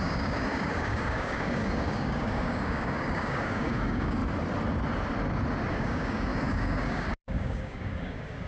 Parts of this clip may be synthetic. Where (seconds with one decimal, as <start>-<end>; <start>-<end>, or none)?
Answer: 0.0-4.2; 5.7-8.5